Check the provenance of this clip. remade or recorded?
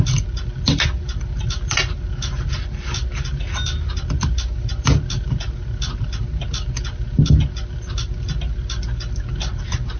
recorded